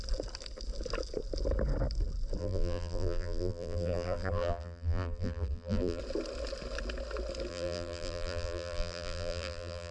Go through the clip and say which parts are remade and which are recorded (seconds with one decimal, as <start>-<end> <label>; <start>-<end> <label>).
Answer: 0.0-2.4 recorded; 2.4-6.0 remade; 6.0-7.5 recorded; 7.5-9.9 remade